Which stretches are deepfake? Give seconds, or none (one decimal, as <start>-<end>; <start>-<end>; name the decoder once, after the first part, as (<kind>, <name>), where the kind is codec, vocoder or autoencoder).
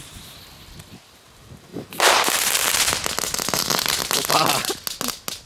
none